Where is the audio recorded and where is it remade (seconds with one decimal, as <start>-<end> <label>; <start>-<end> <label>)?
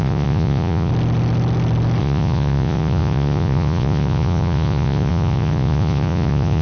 0.0-0.9 remade; 0.9-2.0 recorded; 2.0-6.6 remade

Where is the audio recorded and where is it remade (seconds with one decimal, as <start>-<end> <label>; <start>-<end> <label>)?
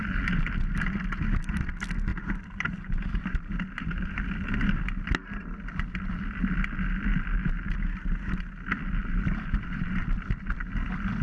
0.0-2.1 recorded; 2.1-4.2 remade; 4.2-9.0 recorded; 9.0-10.0 remade; 10.0-11.2 recorded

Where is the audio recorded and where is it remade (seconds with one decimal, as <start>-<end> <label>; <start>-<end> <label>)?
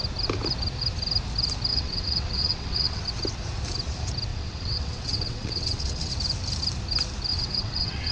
0.0-1.7 recorded; 1.7-3.0 remade; 3.0-4.3 recorded; 4.3-6.1 remade; 6.1-7.3 recorded; 7.3-8.1 remade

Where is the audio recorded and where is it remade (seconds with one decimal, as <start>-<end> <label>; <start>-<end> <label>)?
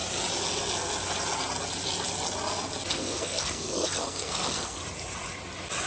0.0-2.9 recorded; 2.9-4.8 remade; 4.8-5.9 recorded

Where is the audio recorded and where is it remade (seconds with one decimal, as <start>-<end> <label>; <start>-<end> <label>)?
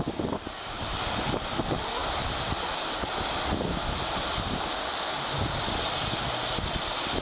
0.0-7.2 recorded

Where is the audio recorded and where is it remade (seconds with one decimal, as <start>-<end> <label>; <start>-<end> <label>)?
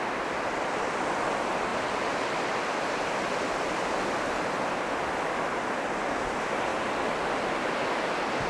0.0-8.5 recorded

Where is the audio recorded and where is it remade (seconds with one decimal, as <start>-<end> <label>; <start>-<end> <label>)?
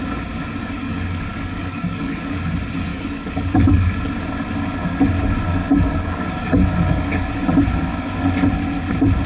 0.0-0.6 recorded; 0.6-2.4 remade; 2.4-2.9 recorded; 2.9-4.1 remade; 4.1-5.6 recorded; 5.6-7.4 remade; 7.4-9.3 recorded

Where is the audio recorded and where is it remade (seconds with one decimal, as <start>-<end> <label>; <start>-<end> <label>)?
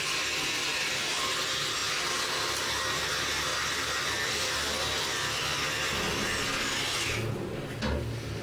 0.0-0.7 recorded; 0.7-1.3 remade; 1.3-3.5 recorded; 3.5-5.4 remade; 5.4-8.4 recorded